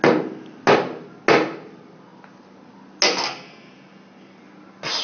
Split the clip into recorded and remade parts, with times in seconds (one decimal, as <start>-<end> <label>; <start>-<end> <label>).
0.0-5.0 recorded